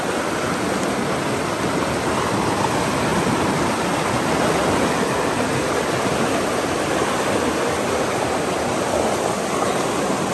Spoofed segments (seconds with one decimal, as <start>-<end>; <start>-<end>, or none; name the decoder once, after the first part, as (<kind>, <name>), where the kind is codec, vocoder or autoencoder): none